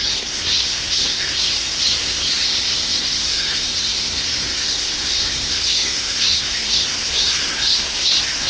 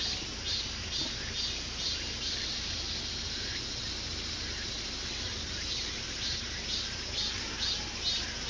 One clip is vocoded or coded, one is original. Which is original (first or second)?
second